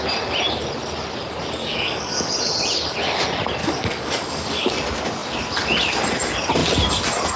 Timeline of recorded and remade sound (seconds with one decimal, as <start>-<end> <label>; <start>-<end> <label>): 0.0-1.6 recorded; 1.6-2.3 remade; 2.3-3.6 recorded; 3.6-4.7 remade; 4.7-7.4 recorded